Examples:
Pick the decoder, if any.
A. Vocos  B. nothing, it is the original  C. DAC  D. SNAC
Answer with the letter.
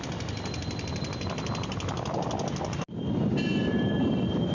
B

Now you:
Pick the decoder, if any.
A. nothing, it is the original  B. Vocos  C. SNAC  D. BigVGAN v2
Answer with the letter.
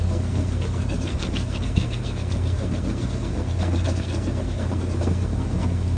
C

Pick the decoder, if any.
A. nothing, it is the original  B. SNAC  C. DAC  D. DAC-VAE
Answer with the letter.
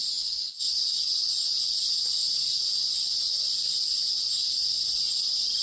A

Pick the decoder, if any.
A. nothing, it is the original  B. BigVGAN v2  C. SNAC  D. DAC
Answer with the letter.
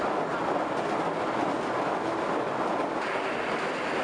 A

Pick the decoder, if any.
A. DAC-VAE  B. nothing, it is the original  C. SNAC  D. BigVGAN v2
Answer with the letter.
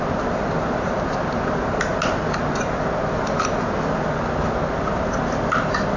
B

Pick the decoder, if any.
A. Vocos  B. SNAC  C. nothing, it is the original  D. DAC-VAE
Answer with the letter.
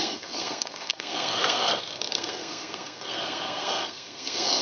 B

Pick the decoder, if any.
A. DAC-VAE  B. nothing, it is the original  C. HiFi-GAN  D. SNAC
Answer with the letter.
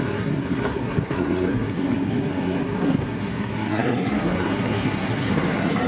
D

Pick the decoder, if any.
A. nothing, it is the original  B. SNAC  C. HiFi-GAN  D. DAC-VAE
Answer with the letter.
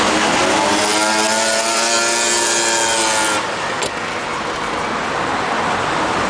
A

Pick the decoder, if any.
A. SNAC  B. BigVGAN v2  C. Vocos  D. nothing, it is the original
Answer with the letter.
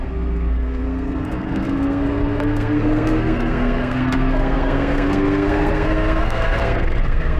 A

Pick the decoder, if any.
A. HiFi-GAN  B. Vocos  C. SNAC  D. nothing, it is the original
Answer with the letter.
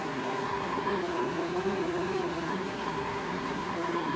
C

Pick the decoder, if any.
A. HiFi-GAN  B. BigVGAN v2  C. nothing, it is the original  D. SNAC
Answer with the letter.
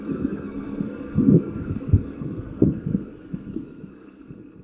D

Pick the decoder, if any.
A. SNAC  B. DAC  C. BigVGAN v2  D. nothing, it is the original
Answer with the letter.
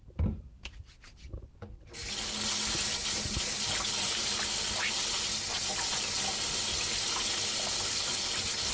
D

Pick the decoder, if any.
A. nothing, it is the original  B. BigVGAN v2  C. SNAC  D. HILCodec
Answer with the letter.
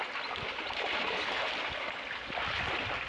A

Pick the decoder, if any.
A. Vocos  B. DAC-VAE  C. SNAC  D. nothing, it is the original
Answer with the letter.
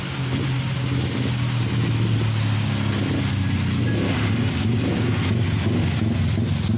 D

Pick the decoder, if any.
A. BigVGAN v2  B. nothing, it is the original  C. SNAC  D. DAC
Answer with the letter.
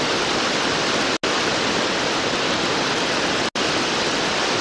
B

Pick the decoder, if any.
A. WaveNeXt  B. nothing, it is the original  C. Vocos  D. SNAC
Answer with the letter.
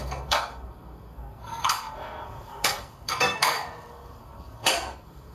D